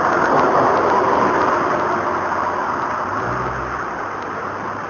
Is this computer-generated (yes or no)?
no